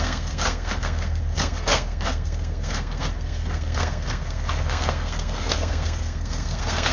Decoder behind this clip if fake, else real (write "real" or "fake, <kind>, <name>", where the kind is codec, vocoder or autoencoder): fake, codec, SNAC